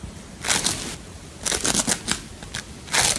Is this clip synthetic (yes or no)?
no